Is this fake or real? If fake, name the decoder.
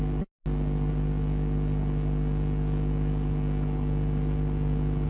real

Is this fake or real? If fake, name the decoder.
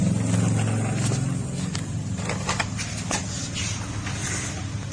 real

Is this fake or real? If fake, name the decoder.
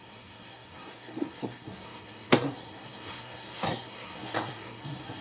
fake, codec, SNAC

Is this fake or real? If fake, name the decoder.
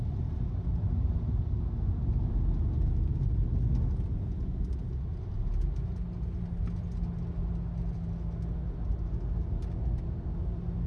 real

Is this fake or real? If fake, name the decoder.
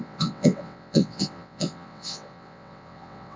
fake, vocoder, WaveNeXt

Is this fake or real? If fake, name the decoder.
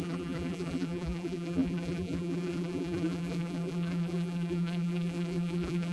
fake, vocoder, BigVGAN v2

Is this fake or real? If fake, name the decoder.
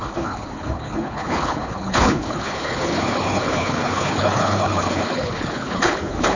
fake, codec, HILCodec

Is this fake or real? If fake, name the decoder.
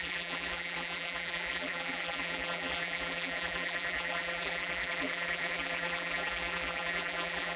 fake, vocoder, BigVGAN v2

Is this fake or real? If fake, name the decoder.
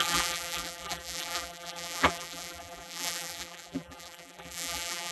fake, vocoder, BigVGAN v2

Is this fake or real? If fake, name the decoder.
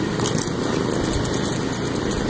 real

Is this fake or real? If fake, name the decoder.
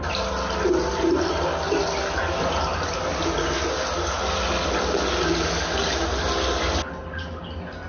real